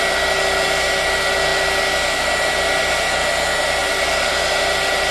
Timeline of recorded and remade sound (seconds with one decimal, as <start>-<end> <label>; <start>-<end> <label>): 0.0-5.1 recorded